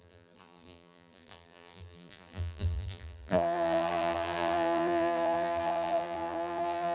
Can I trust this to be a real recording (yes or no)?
no